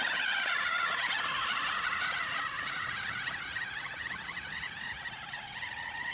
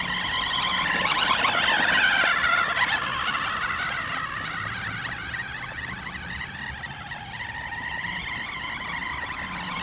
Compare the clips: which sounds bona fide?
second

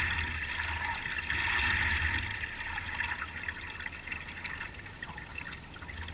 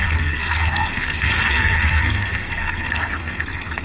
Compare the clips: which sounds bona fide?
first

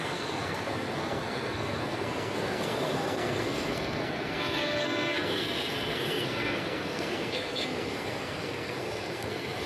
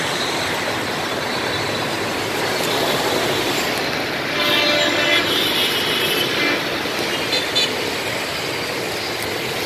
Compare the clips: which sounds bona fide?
second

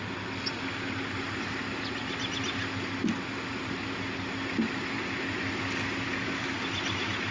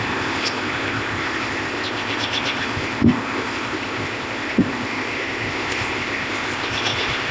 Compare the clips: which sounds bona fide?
first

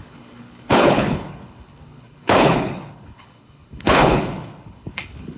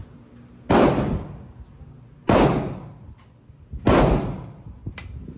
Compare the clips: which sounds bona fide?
second